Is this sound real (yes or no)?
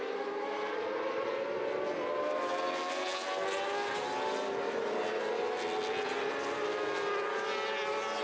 yes